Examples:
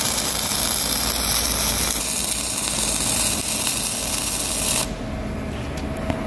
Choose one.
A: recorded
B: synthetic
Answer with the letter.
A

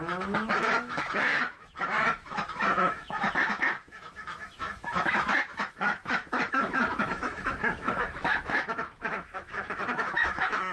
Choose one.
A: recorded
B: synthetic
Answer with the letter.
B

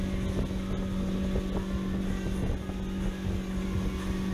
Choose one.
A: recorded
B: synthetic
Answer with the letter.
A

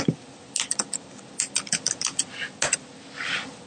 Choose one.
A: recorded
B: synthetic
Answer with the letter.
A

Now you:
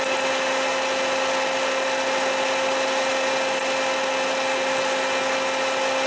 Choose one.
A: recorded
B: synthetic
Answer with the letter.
A